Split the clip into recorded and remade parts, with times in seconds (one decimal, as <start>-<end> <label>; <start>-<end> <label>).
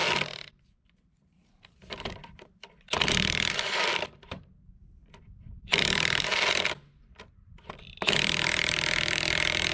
0.0-6.3 remade; 6.3-7.0 recorded; 7.0-9.7 remade